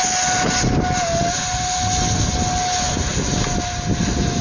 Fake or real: real